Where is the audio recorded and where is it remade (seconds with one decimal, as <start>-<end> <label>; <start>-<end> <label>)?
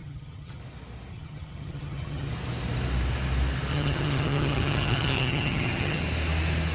0.0-0.6 remade; 0.6-1.1 recorded; 1.1-2.3 remade; 2.3-3.7 recorded; 3.7-6.0 remade; 6.0-6.7 recorded